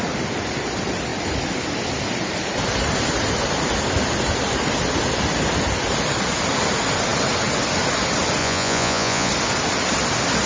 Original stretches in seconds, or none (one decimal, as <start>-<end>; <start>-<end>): 0.0-8.4; 9.3-10.5